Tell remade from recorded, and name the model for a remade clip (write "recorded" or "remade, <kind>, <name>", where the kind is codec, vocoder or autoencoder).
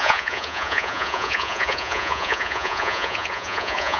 remade, vocoder, Vocos